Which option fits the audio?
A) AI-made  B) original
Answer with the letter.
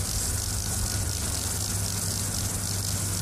B